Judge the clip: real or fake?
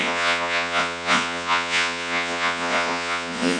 fake